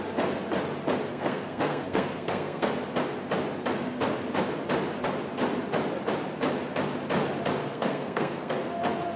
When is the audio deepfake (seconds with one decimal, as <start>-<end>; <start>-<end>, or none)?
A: 1.1-2.7; 7.6-8.5